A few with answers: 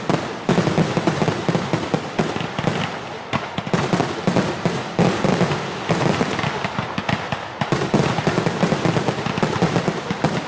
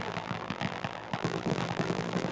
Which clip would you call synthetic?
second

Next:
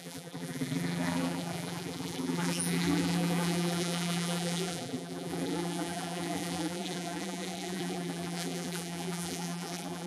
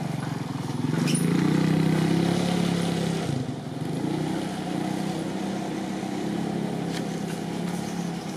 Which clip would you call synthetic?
first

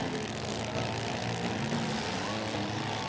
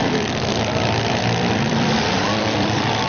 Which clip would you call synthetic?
second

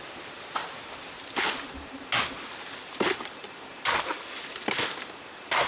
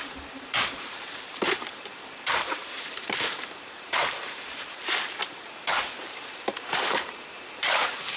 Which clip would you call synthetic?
second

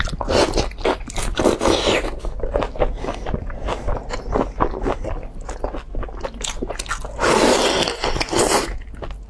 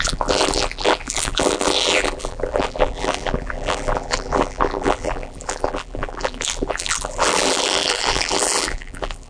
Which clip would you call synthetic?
second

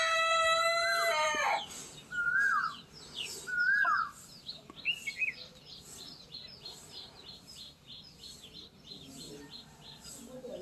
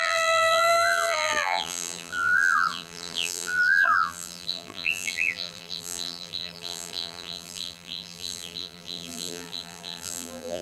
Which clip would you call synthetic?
second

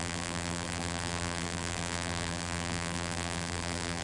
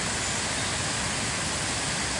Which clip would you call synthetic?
first